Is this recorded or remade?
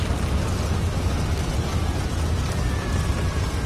recorded